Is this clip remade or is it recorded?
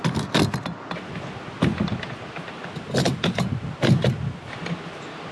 recorded